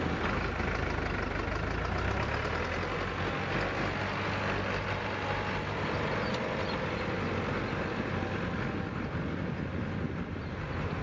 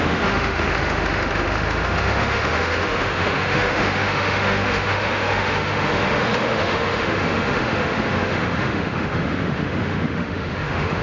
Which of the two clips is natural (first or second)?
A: first